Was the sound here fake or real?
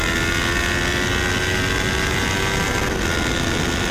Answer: real